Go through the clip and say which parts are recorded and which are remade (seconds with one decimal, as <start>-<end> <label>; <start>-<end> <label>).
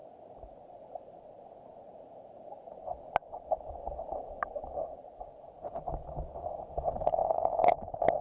0.0-8.2 recorded